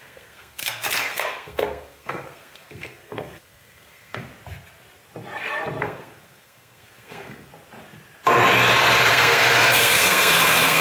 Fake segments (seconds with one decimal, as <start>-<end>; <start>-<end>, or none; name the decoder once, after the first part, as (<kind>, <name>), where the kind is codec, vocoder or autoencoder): 0.0-4.3 (codec, SNAC); 5.8-7.5; 9.1-10.8